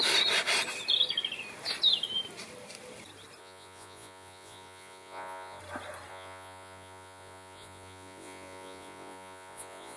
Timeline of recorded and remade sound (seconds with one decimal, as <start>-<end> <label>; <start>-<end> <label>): 0.0-3.4 recorded; 3.4-5.6 remade; 5.6-6.1 recorded; 6.1-10.0 remade